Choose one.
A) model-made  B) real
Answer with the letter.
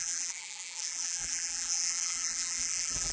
A